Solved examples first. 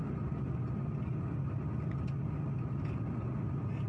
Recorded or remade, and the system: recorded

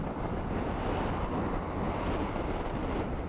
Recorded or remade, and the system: recorded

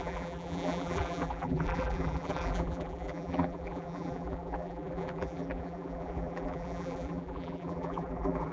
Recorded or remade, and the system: remade, vocoder, BigVGAN v2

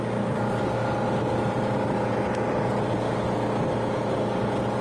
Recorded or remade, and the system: recorded